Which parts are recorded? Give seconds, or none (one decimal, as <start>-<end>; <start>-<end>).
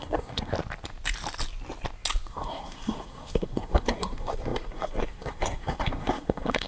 0.5-2.3